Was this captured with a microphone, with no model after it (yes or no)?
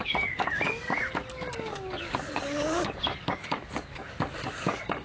no